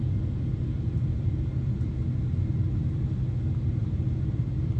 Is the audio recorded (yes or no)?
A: yes